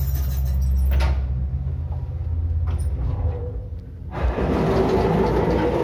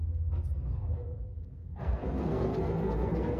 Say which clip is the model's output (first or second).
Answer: second